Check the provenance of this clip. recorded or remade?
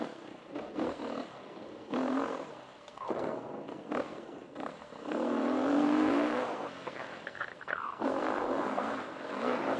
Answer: remade